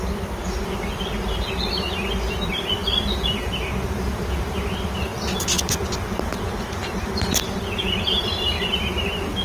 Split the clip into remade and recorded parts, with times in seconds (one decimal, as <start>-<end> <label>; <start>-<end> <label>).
0.0-9.4 recorded